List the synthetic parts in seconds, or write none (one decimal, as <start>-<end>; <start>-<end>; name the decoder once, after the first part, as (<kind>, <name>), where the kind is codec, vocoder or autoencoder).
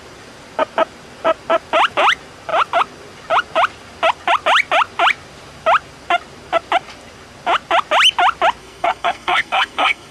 8.6-10.1 (codec, SNAC)